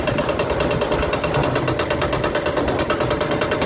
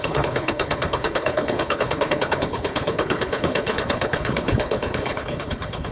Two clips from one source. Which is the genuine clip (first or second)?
first